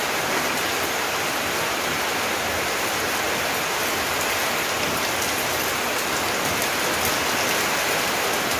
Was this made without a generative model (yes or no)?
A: yes